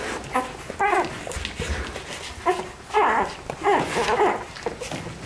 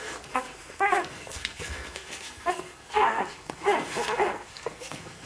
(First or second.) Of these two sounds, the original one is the first